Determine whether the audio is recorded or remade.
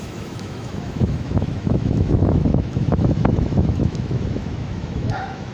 remade